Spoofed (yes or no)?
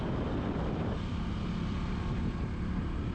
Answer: yes